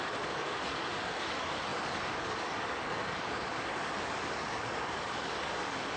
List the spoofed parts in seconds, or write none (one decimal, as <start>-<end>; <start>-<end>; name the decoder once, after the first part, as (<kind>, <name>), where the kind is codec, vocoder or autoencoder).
0.0-6.0 (codec, DAC)